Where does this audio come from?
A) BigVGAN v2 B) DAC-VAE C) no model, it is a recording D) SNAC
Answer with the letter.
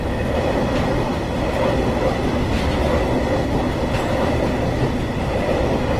C